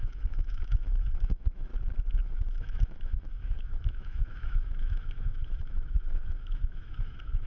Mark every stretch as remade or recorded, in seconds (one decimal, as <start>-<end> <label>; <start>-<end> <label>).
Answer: 0.0-1.7 remade; 1.7-2.2 recorded; 2.2-7.5 remade